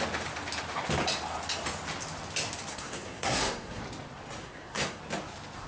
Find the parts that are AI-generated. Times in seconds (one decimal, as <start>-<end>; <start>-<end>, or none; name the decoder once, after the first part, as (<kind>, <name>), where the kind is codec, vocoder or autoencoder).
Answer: 2.7-3.8 (codec, SNAC); 4.4-5.0